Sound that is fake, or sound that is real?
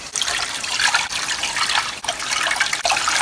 real